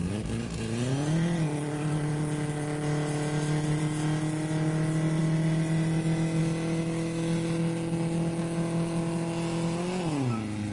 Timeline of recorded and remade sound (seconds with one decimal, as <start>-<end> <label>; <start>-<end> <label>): 0.0-3.8 remade; 3.8-10.7 recorded